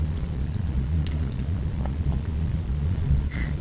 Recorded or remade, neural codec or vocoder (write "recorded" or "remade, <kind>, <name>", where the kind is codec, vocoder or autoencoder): remade, vocoder, Vocos